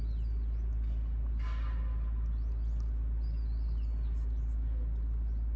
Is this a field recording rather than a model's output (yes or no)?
yes